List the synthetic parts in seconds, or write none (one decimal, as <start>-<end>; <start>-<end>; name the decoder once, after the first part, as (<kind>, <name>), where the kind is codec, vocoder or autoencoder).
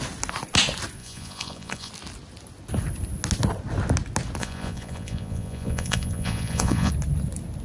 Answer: 1.0-1.9 (vocoder, Vocos); 4.4-6.9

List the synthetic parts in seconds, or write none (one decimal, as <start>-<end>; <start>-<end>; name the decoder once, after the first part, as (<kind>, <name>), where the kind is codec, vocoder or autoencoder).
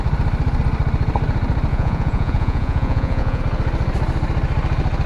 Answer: 1.7-3.4 (vocoder, Vocos)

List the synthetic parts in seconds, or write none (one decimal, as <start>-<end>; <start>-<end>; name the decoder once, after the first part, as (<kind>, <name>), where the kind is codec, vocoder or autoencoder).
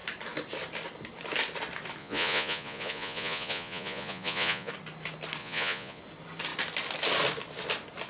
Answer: 2.0-4.7 (vocoder, Vocos); 5.4-6.0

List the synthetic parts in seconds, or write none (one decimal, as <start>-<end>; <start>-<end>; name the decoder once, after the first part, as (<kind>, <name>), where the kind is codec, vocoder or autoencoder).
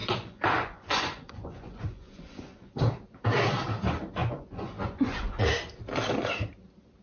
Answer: 0.0-2.7 (vocoder, Vocos); 4.2-5.4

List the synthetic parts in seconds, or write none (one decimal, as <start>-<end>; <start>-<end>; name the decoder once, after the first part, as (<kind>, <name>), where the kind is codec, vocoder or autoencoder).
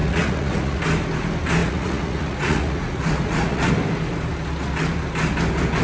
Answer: 0.0-0.8 (vocoder, Vocos); 1.6-3.7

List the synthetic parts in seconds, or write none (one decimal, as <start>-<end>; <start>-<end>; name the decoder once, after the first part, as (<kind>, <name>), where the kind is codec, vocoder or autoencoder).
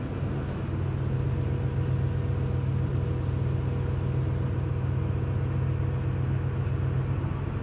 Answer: none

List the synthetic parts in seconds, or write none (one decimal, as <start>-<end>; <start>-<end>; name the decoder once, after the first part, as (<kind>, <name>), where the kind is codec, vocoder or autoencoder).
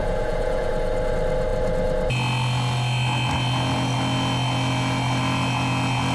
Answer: 0.0-0.7 (vocoder, Vocos)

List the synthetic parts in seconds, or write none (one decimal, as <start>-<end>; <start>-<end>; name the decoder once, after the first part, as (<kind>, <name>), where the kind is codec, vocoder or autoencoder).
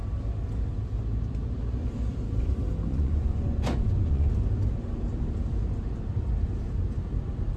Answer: 2.9-4.3 (vocoder, Vocos)